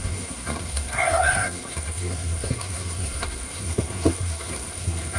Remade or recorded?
remade